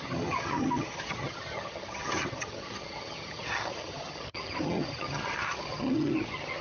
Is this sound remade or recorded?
remade